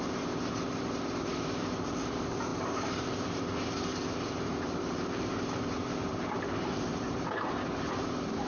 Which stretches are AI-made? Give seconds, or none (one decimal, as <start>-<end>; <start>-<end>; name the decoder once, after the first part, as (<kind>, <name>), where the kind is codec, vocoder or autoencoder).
0.0-8.5 (vocoder, BigVGAN v2)